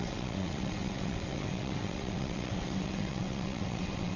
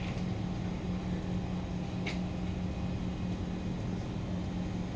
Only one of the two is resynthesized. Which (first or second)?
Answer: first